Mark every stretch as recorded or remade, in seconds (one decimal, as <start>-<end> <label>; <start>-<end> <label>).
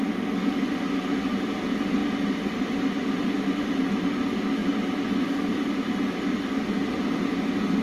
0.0-2.0 recorded; 2.0-4.0 remade; 4.0-4.6 recorded; 4.6-7.3 remade; 7.3-7.8 recorded